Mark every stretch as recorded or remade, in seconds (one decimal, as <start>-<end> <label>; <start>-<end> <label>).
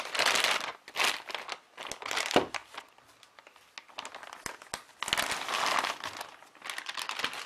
0.0-7.5 recorded